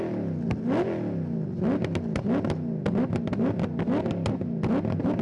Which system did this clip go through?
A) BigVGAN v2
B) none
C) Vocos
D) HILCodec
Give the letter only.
B